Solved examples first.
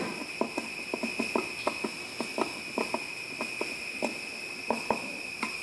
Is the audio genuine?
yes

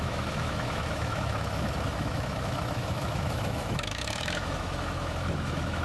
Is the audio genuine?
no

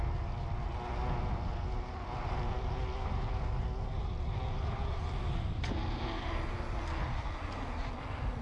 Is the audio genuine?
yes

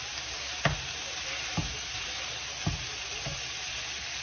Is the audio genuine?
yes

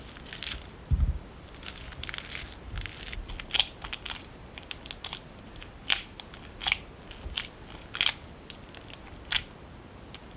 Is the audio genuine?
yes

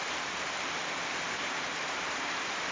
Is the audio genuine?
no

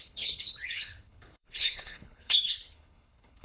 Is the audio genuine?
no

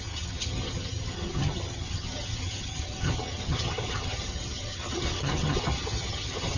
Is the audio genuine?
no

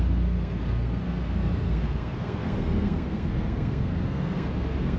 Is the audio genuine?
no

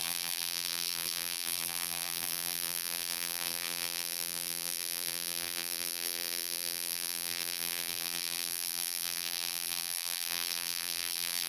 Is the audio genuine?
no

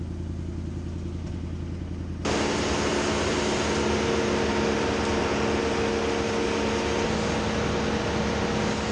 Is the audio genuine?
yes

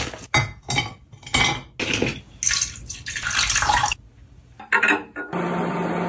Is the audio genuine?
yes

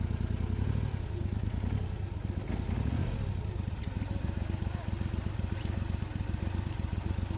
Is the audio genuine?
yes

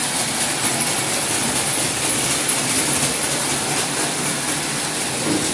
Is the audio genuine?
yes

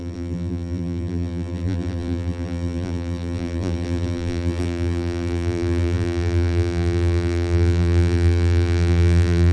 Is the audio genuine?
no